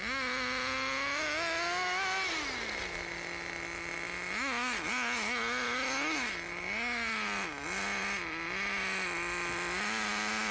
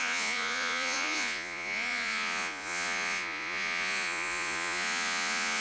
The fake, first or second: second